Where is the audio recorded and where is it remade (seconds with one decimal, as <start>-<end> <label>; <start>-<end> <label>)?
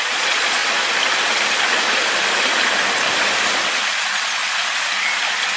0.0-0.6 remade; 0.6-4.0 recorded; 4.0-4.4 remade; 4.4-5.6 recorded